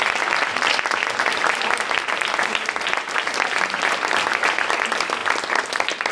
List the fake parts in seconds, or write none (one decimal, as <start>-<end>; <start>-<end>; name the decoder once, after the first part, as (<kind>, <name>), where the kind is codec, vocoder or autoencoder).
none